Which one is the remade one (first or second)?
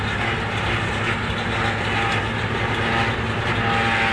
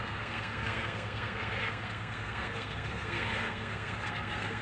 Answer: second